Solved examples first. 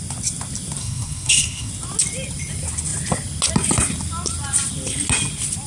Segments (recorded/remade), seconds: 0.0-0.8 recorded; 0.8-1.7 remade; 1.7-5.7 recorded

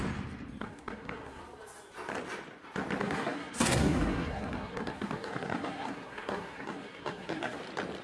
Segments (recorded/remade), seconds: 0.0-0.6 recorded; 0.6-1.4 remade; 1.4-3.0 recorded; 3.0-7.6 remade; 7.6-8.0 recorded